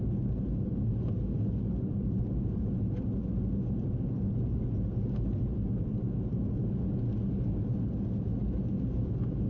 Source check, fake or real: real